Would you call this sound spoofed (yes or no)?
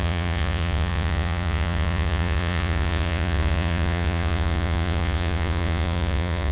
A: yes